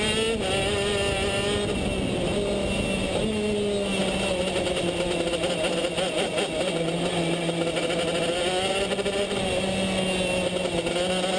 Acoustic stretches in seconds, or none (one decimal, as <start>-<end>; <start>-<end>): 0.0-11.4